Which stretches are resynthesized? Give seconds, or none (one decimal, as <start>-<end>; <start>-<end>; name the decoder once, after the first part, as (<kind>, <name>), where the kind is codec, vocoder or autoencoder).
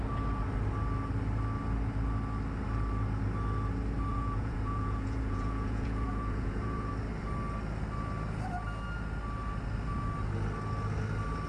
4.1-6.9 (vocoder, Vocos)